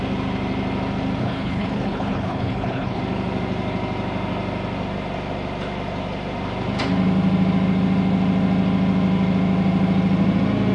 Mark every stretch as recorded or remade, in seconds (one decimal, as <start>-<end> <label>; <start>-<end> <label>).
0.0-1.2 recorded; 1.2-3.0 remade; 3.0-10.7 recorded